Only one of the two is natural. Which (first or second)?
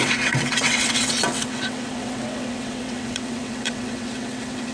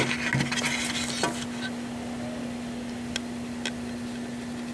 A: second